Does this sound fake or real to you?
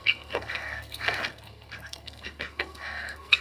fake